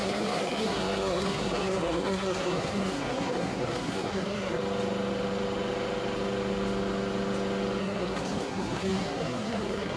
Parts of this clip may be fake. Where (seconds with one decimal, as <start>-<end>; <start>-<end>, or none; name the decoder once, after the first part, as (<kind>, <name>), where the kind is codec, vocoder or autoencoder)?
0.0-4.6 (codec, SNAC); 7.8-10.0